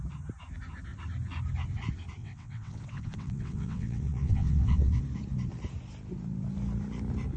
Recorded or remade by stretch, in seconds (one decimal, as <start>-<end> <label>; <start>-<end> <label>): 0.0-2.2 recorded; 2.2-5.0 remade; 5.0-7.4 recorded

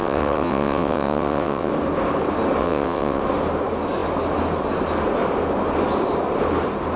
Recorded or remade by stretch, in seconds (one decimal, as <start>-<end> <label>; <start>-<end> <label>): 0.0-1.7 remade; 1.7-2.6 recorded; 2.6-3.2 remade; 3.2-7.0 recorded

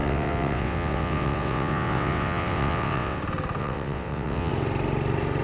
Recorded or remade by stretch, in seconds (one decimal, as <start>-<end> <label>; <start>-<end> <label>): 0.0-3.2 remade; 3.2-3.6 recorded; 3.6-4.5 remade; 4.5-5.4 recorded

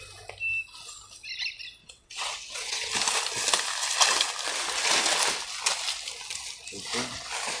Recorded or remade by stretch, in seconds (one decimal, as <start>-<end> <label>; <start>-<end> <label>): 0.0-1.8 recorded; 1.8-2.9 remade; 2.9-7.6 recorded

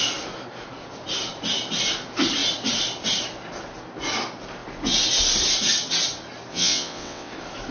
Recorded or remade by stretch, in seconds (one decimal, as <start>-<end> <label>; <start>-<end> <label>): 0.0-6.5 recorded; 6.5-7.3 remade; 7.3-7.7 recorded

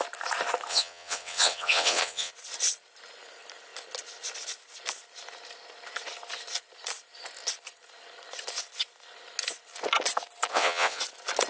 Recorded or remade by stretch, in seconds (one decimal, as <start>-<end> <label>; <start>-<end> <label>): 0.0-0.7 recorded; 0.7-2.3 remade; 2.3-10.5 recorded; 10.5-11.0 remade; 11.0-11.5 recorded

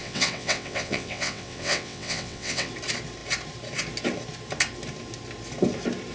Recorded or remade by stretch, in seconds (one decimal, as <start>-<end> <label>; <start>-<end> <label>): 0.0-2.7 remade; 2.7-6.1 recorded

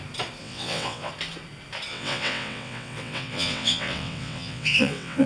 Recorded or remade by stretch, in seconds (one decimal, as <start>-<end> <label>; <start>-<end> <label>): 0.0-0.4 recorded; 0.4-1.1 remade; 1.1-1.9 recorded; 1.9-5.3 remade